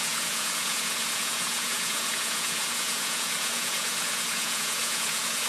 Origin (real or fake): fake